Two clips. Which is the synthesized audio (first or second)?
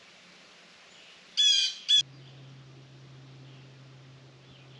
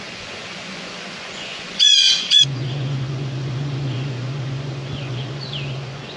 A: second